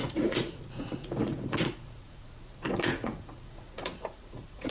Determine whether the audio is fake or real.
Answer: fake